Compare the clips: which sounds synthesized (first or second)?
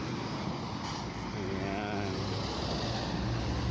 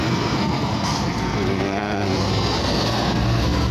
second